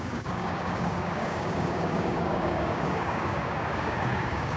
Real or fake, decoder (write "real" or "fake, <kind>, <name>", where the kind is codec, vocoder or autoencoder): fake, codec, DAC